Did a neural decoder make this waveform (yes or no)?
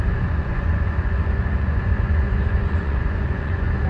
yes